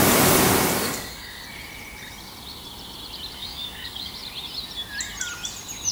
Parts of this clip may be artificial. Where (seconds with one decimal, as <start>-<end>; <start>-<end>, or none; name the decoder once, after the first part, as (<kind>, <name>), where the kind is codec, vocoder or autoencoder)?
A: 0.8-1.4 (codec, DAC); 3.4-4.1